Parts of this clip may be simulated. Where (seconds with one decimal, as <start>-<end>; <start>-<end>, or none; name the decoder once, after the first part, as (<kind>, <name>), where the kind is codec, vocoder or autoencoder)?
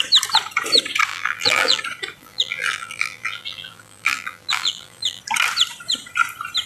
1.1-1.8 (vocoder, BigVGAN v2); 2.2-5.2